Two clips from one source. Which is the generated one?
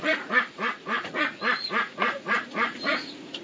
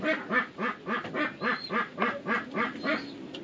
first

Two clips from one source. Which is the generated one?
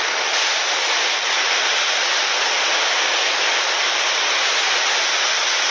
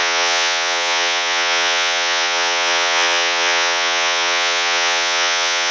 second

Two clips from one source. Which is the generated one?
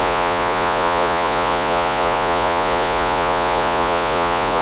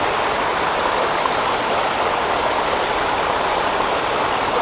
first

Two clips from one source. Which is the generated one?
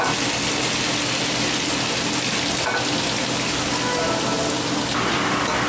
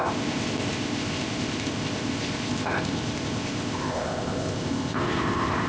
second